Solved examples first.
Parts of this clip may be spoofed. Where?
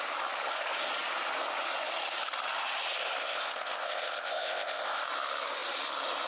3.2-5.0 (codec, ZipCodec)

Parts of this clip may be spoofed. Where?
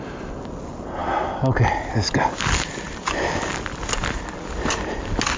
none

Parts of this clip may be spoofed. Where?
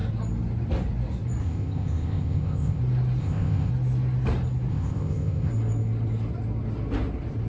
1.4-2.8 (codec, ZipCodec); 3.2-3.7; 4.7-5.5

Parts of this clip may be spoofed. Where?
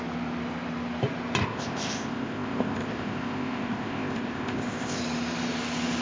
1.4-5.0 (codec, ZipCodec)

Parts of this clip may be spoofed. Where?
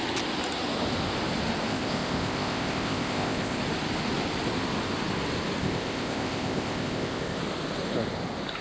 1.7-3.6 (codec, ZipCodec); 5.6-7.4